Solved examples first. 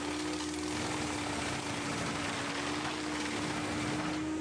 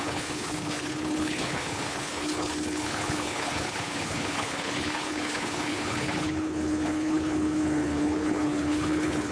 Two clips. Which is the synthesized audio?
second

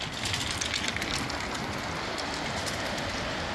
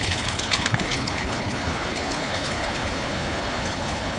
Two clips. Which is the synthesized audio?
second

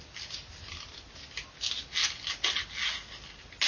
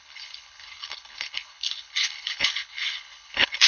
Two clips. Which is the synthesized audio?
second